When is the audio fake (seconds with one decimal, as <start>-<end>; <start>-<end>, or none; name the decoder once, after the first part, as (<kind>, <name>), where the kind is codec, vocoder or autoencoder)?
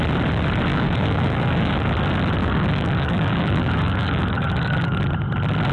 0.7-1.9 (codec, DAC); 2.4-5.0